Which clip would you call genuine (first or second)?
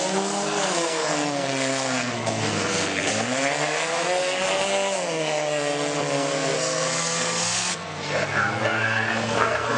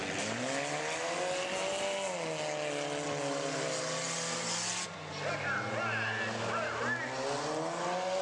second